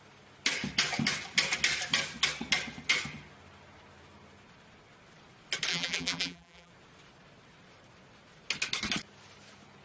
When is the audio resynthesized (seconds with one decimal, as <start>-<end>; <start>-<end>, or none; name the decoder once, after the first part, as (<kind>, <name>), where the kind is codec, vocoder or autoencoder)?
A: 5.7-6.7 (vocoder, BigVGAN v2)